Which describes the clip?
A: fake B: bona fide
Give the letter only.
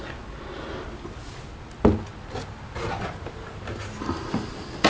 B